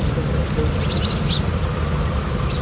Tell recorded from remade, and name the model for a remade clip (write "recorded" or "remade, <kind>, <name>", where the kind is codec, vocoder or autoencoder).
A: recorded